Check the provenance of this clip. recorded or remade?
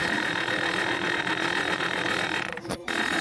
remade